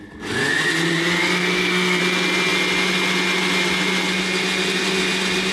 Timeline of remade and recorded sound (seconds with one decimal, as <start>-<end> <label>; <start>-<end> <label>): 0.0-1.2 recorded; 1.2-2.0 remade; 2.0-5.5 recorded

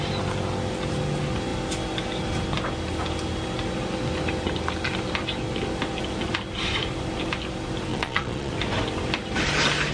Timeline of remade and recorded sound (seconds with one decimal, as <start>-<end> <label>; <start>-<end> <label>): 0.0-7.9 recorded; 7.9-8.5 remade; 8.5-9.9 recorded

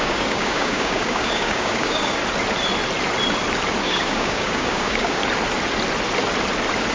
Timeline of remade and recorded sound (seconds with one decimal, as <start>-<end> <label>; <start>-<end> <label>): 0.0-2.2 remade; 2.2-3.8 recorded; 3.8-5.2 remade; 5.2-6.9 recorded

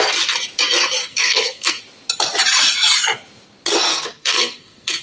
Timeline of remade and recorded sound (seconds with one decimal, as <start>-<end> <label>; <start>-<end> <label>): 0.0-1.0 recorded; 1.0-1.8 remade; 1.8-3.9 recorded; 3.9-5.0 remade

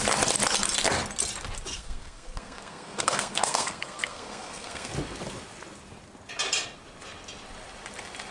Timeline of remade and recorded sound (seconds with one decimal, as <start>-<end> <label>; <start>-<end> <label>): 0.0-1.7 recorded; 1.7-4.9 remade; 4.9-8.3 recorded

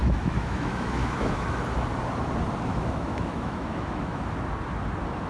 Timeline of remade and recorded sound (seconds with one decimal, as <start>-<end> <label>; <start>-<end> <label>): 0.0-1.6 remade; 1.6-2.7 recorded; 2.7-4.2 remade; 4.2-5.3 recorded